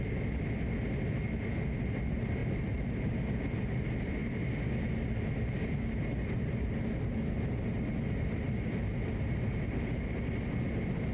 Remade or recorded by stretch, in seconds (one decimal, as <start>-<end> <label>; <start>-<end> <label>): 0.0-11.1 recorded